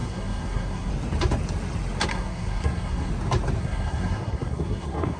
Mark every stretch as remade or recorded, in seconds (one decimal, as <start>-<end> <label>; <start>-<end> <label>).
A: 0.0-0.9 remade; 0.9-2.1 recorded; 2.1-3.1 remade; 3.1-3.6 recorded; 3.6-5.2 remade